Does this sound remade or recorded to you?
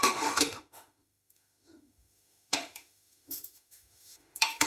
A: remade